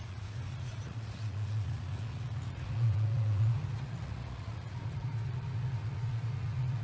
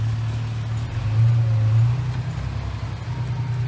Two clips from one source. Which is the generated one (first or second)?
first